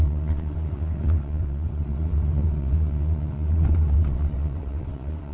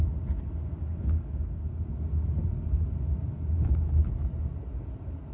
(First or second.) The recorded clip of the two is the second